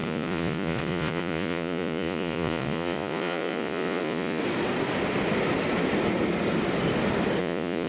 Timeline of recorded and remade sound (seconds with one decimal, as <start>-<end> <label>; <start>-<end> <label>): 0.0-4.4 remade; 4.4-7.4 recorded; 7.4-7.9 remade